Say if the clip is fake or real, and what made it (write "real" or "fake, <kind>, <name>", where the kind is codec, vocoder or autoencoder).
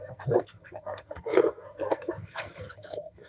fake, codec, SNAC